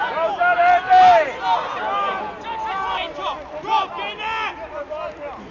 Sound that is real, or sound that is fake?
real